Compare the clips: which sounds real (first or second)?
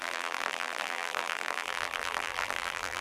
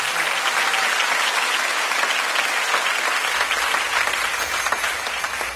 second